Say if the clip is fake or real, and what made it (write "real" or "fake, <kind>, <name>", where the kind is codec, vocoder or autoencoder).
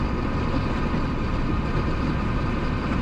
real